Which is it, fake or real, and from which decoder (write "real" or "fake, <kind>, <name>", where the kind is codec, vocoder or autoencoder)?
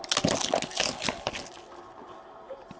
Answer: real